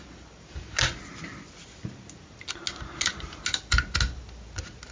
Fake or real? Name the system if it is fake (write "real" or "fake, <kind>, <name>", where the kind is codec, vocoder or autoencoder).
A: real